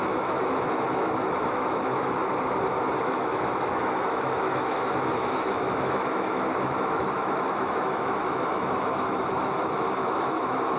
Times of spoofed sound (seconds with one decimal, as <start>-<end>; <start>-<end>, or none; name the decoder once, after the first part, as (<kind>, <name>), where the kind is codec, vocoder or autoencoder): 0.0-2.2 (autoencoder, DAC-VAE); 3.0-10.8